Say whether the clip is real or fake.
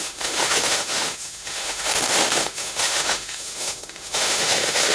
fake